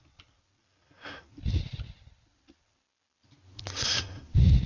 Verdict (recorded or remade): recorded